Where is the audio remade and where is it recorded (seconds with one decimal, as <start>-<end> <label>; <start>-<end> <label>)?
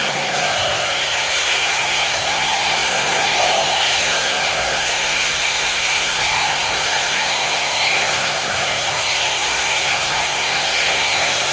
0.0-11.5 remade